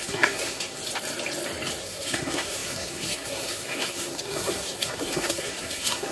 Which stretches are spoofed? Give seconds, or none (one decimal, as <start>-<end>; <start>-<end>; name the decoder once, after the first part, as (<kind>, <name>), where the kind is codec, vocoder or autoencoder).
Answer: 0.0-0.8 (codec, SNAC); 1.8-6.1